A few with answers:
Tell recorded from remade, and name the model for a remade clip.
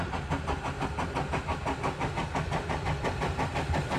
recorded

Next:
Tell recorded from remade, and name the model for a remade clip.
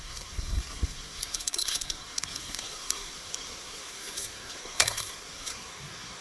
remade, codec, SNAC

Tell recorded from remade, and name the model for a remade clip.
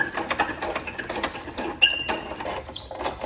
recorded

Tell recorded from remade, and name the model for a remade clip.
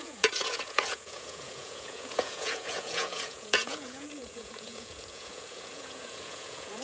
remade, vocoder, Vocos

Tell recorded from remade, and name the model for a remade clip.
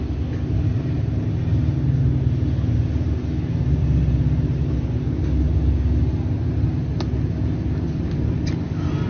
recorded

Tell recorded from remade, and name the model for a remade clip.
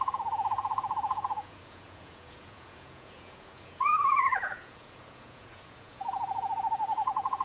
remade, vocoder, Vocos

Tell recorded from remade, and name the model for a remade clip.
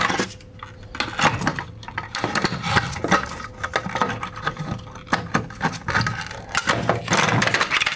recorded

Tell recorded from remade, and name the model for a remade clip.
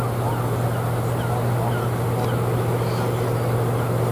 recorded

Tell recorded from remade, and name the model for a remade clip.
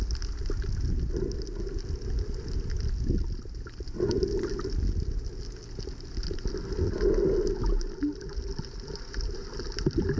recorded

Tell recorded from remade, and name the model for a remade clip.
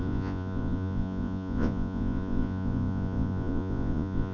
remade, vocoder, Vocos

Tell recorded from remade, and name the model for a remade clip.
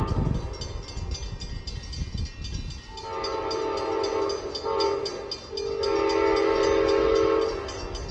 recorded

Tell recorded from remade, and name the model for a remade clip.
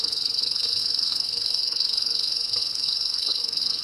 remade, codec, SNAC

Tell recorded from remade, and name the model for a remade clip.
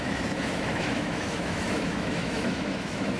remade, autoencoder, DAC-VAE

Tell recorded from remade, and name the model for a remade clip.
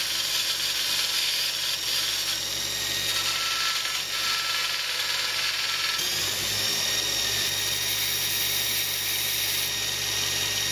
recorded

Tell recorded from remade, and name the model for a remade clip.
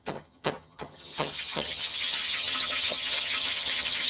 remade, vocoder, HiFi-GAN